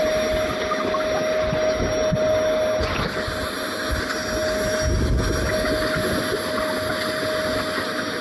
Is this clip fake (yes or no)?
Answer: no